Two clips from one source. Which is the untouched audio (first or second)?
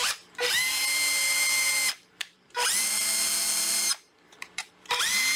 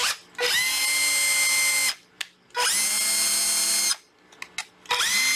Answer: second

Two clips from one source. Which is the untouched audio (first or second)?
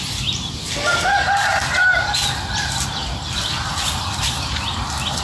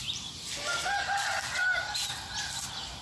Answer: second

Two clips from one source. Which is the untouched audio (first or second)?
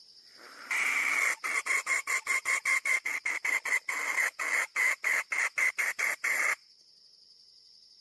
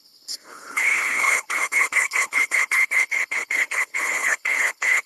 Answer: first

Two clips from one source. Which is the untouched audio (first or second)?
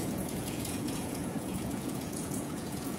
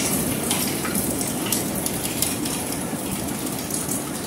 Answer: second